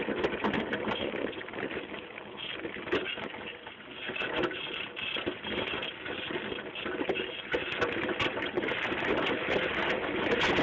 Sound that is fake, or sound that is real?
real